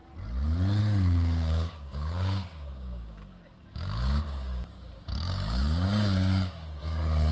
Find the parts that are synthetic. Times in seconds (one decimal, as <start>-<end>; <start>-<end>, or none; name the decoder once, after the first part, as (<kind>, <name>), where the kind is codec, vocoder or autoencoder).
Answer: 0.8-7.3 (codec, DAC)